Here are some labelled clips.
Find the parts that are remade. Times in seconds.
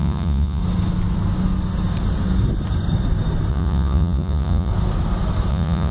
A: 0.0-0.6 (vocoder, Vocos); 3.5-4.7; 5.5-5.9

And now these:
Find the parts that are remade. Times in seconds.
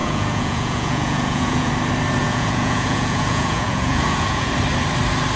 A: 0.0-1.7 (vocoder, Vocos); 2.2-4.5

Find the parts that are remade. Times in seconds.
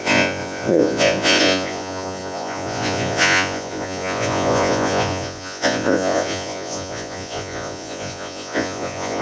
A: 0.0-9.2 (vocoder, Vocos)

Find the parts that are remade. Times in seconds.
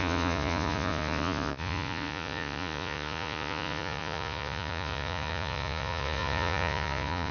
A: 0.0-7.3 (vocoder, Vocos)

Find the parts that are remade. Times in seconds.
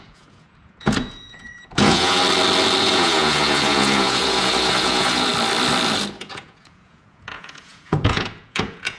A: 0.0-2.2 (vocoder, Vocos); 2.8-5.3; 6.2-9.0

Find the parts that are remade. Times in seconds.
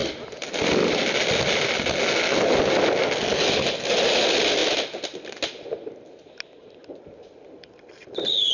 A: none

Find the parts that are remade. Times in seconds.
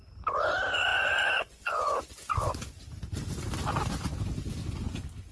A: 0.9-2.3 (vocoder, Vocos)